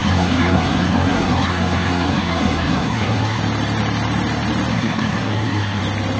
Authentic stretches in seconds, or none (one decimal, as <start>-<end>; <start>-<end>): 3.4-4.7; 5.8-6.2